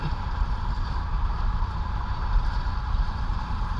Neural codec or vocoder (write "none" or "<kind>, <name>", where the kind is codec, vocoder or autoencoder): vocoder, BigVGAN v2